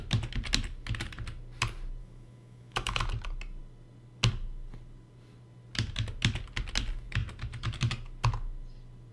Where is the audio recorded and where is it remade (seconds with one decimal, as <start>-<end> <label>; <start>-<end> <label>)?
0.0-2.0 recorded; 2.0-3.0 remade; 3.0-9.1 recorded